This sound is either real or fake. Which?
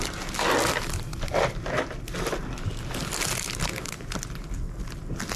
real